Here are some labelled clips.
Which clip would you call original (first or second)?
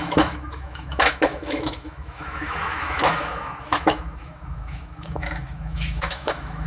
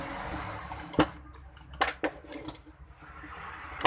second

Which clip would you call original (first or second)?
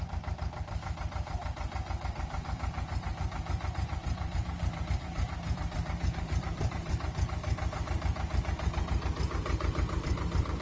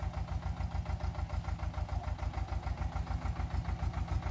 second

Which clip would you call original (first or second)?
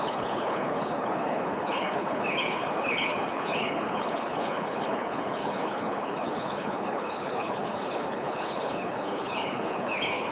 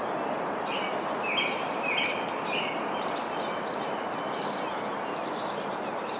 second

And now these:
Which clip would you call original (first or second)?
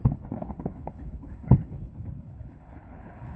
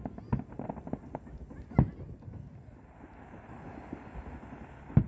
second